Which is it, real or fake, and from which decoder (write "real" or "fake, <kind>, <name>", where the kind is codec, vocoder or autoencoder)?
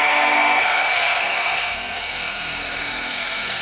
fake, codec, SNAC